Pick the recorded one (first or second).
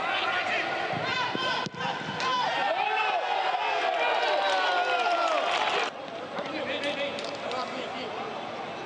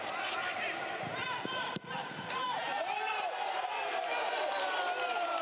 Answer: first